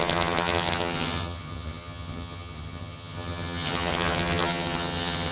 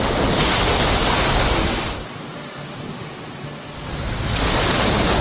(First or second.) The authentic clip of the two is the second